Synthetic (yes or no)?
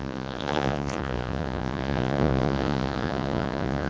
yes